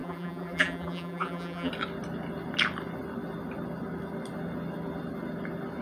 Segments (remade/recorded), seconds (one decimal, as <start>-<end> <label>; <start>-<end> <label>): 0.0-1.7 remade; 1.7-5.8 recorded